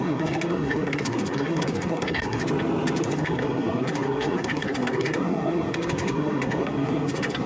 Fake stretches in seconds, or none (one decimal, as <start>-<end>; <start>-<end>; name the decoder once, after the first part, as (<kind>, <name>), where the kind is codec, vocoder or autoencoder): 0.0-2.4 (codec, SNAC); 3.0-7.5